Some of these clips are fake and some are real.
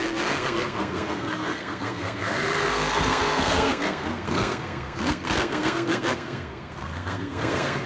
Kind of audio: fake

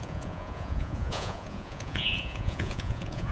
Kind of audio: fake